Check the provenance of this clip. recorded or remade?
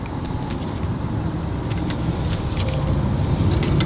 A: recorded